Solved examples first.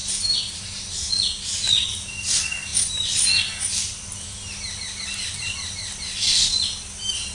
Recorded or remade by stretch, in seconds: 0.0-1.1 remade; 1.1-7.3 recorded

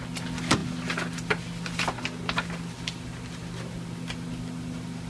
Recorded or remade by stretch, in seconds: 0.0-5.1 recorded

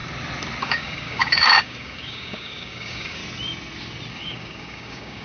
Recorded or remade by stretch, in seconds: 0.0-0.6 recorded; 0.6-3.2 remade; 3.2-4.1 recorded; 4.1-5.2 remade